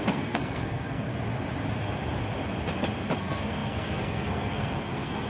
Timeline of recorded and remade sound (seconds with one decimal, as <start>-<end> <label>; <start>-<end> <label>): 0.0-1.1 remade; 1.1-3.2 recorded; 3.2-5.3 remade